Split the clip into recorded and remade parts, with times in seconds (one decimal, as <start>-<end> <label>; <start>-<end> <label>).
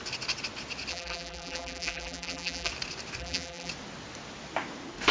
0.0-0.9 recorded; 0.9-2.7 remade; 2.7-3.2 recorded; 3.2-3.7 remade; 3.7-5.1 recorded